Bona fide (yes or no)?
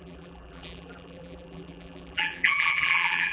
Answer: no